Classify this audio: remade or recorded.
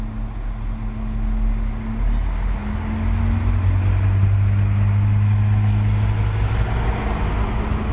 recorded